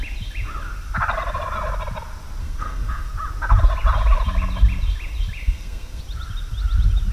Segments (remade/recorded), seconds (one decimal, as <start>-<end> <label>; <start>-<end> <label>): 0.0-2.4 recorded; 2.4-3.1 remade; 3.1-5.4 recorded; 5.4-6.0 remade; 6.0-7.1 recorded